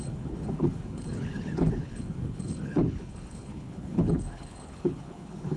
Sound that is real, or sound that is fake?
fake